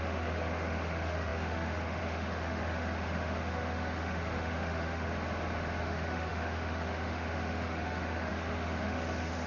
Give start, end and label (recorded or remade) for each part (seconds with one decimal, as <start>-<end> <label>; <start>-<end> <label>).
0.0-5.1 remade; 5.1-5.8 recorded; 5.8-9.5 remade